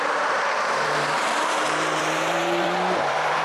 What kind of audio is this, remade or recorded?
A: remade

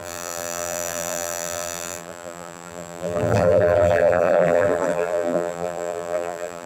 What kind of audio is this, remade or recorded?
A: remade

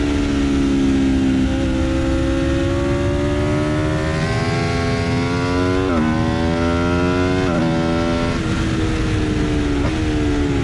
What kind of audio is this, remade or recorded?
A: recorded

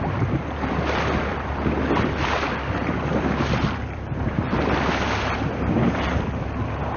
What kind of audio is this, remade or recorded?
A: remade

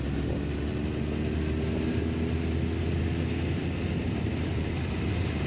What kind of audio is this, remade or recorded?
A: recorded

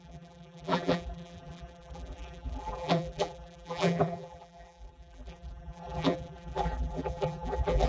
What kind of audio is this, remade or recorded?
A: remade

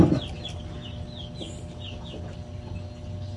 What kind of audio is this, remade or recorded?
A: recorded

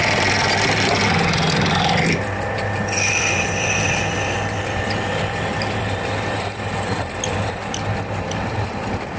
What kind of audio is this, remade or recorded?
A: recorded